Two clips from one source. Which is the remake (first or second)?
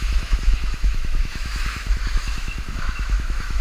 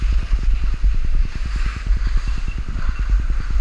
first